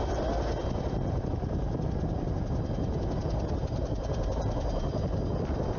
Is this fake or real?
real